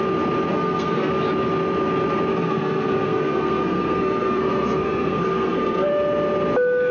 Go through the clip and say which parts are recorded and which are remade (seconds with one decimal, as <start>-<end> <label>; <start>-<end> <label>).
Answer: 0.0-0.5 recorded; 0.5-1.1 remade; 1.1-2.3 recorded; 2.3-5.9 remade; 5.9-6.9 recorded